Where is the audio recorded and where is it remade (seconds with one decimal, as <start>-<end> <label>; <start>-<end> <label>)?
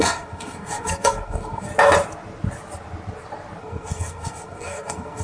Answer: 0.0-1.7 remade; 1.7-3.6 recorded; 3.6-5.2 remade